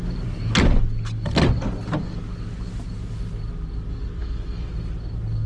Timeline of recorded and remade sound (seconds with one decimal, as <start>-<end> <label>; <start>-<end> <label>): 0.0-4.2 recorded; 4.2-4.7 remade; 4.7-5.5 recorded